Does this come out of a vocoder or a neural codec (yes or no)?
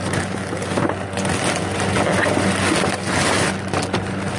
no